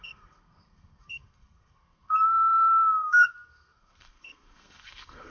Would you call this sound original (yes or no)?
no